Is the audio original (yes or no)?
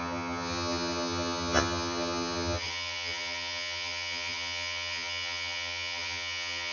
no